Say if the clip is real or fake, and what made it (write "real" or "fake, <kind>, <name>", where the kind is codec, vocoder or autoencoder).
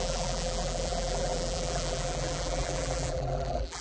fake, vocoder, BigVGAN v2